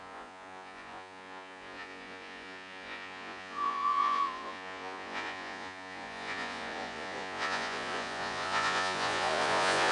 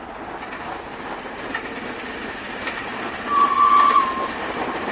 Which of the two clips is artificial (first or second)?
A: first